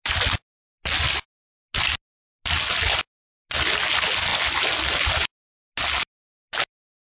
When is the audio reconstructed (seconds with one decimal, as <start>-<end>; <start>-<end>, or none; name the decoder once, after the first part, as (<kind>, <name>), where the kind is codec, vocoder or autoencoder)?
none

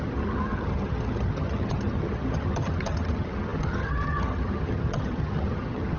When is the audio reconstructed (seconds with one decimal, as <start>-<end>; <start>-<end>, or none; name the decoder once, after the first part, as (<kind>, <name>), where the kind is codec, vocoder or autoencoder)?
0.0-6.0 (vocoder, HiFi-GAN)

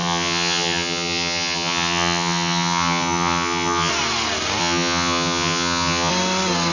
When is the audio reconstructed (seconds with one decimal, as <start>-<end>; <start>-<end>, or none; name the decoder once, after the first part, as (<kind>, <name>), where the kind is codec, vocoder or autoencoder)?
0.0-3.9 (vocoder, HiFi-GAN); 4.6-6.1

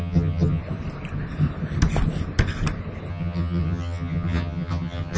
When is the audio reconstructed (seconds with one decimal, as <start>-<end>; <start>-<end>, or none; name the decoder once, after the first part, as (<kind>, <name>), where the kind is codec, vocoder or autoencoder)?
0.0-0.6 (vocoder, HiFi-GAN); 3.1-5.2

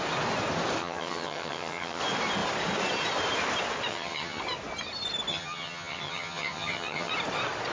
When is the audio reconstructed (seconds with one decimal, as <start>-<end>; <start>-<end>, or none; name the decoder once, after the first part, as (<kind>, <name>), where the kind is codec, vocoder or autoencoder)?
0.8-2.0 (vocoder, HiFi-GAN); 3.9-4.4; 5.3-7.1

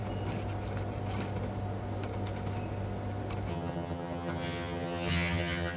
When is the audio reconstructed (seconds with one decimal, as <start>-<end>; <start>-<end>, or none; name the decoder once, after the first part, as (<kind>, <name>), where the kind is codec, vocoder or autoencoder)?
3.5-5.8 (vocoder, HiFi-GAN)

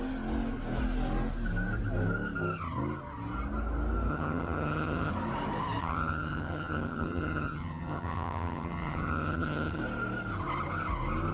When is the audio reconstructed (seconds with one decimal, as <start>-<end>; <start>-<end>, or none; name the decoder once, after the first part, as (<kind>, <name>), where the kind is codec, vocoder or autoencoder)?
4.1-5.1 (vocoder, HiFi-GAN); 5.8-9.8